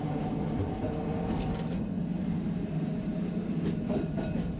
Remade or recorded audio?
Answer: remade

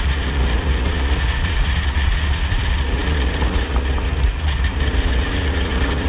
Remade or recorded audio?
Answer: remade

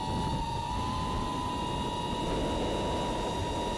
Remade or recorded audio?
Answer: recorded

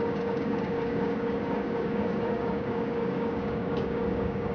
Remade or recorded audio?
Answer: remade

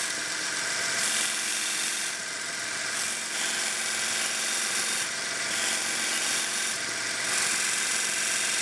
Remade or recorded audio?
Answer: recorded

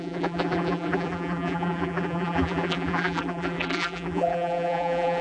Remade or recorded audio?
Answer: remade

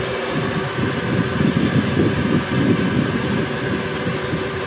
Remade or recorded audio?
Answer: recorded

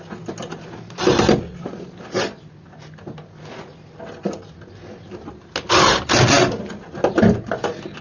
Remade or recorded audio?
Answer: recorded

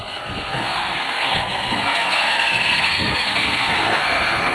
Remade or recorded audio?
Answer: remade